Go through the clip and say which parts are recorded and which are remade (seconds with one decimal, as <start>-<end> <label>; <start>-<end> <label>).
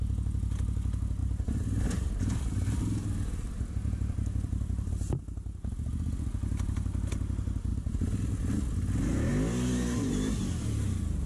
0.0-1.2 recorded; 1.2-4.9 remade; 4.9-7.7 recorded; 7.7-8.5 remade; 8.5-9.3 recorded; 9.3-11.3 remade